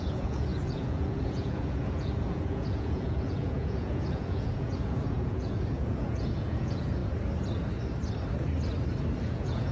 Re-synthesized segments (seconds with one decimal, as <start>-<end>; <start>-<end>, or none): 0.0-7.0; 9.2-9.7